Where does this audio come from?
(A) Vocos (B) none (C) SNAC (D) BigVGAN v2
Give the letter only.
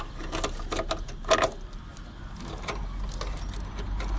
B